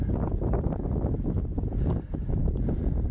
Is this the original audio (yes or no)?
yes